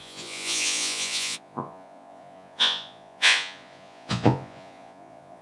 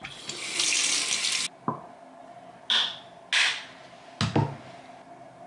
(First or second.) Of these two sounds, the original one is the second